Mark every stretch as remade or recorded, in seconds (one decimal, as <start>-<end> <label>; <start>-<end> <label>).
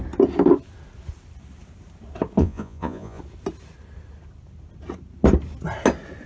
0.0-2.4 recorded; 2.4-3.2 remade; 3.2-6.3 recorded